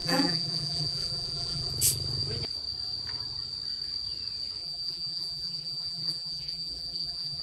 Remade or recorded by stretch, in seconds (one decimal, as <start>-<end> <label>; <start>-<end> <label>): 0.0-1.7 remade; 1.7-4.6 recorded; 4.6-7.4 remade